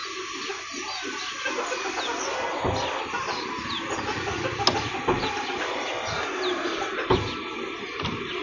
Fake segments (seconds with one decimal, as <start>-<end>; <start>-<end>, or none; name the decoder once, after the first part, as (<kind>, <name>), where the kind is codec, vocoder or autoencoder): none